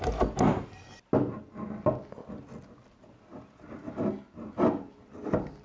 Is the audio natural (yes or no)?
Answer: yes